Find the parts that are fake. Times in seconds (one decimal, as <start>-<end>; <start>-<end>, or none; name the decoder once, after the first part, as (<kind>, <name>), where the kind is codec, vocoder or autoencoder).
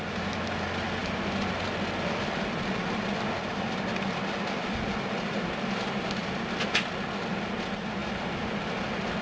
1.0-5.4 (vocoder, BigVGAN v2); 8.0-9.2